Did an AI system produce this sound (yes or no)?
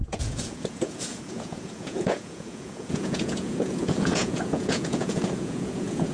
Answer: yes